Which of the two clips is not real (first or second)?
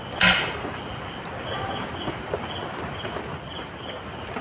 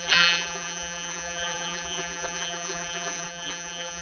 second